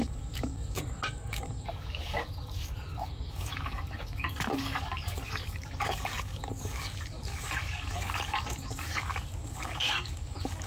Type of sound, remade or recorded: remade